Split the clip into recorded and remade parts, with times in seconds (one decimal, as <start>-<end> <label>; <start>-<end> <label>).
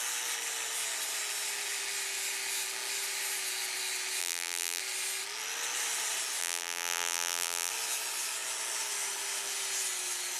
0.0-4.2 recorded; 4.2-4.8 remade; 4.8-6.4 recorded; 6.4-7.7 remade; 7.7-10.4 recorded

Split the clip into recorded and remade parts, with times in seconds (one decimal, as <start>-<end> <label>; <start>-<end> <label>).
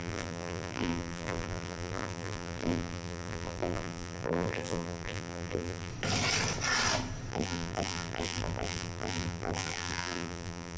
0.0-5.9 remade; 5.9-7.3 recorded; 7.3-10.8 remade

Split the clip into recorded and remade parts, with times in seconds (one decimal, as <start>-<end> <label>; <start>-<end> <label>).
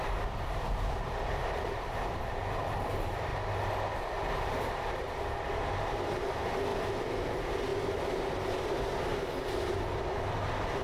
0.0-3.3 remade; 3.3-5.9 recorded; 5.9-6.7 remade; 6.7-7.3 recorded; 7.3-7.7 remade; 7.7-10.0 recorded; 10.0-10.8 remade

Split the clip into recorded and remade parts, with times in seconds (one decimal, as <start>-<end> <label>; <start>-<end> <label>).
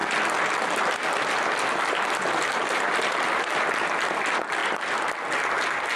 0.0-4.6 recorded; 4.6-5.2 remade; 5.2-6.0 recorded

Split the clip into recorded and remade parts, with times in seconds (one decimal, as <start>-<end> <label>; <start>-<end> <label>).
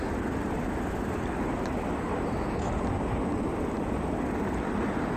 0.0-3.5 recorded; 3.5-4.8 remade; 4.8-5.2 recorded